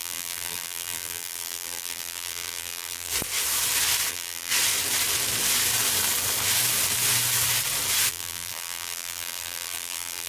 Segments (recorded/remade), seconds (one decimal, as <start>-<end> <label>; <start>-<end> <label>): 0.0-3.1 remade; 3.1-4.1 recorded; 4.1-4.5 remade; 4.5-8.1 recorded; 8.1-10.3 remade